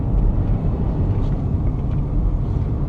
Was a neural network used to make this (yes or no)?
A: yes